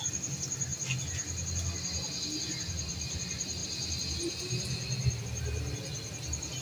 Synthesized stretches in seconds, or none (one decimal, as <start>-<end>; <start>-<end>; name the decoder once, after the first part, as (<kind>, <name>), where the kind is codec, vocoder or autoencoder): none